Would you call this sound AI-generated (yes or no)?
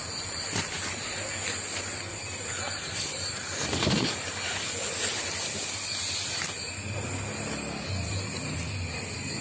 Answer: no